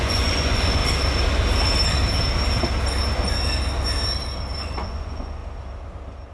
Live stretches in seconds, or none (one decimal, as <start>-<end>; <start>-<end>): 0.8-4.6; 5.4-6.3